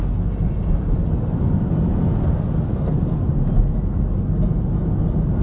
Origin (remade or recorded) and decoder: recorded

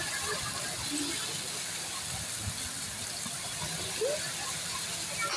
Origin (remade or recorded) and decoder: recorded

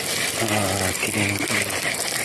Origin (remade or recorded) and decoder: recorded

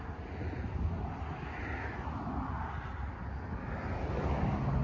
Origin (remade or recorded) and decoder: recorded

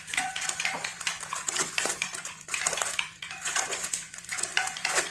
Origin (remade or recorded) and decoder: remade, vocoder, Vocos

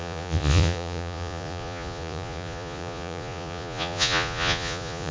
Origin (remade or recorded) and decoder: remade, vocoder, Vocos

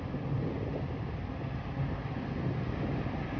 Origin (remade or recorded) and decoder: recorded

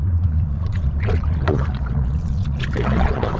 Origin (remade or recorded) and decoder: remade, vocoder, Vocos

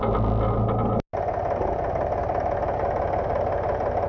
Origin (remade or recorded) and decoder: recorded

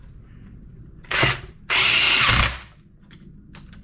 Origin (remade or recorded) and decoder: recorded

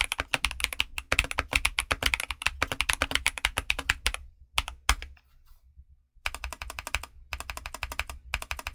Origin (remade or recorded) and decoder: recorded